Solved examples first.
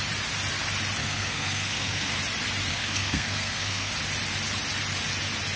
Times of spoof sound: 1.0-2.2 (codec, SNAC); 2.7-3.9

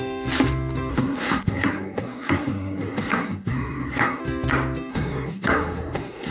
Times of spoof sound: 0.9-4.2 (codec, SNAC); 4.9-6.3

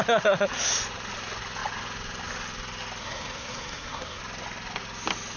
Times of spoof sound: 3.0-4.2 (codec, SNAC)

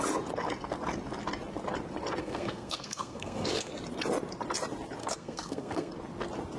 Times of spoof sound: 2.2-3.7 (codec, SNAC); 5.0-5.9